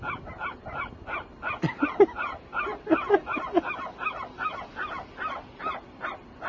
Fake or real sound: real